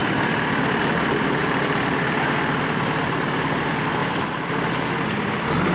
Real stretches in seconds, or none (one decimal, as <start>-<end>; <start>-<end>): 0.8-1.4; 2.6-4.0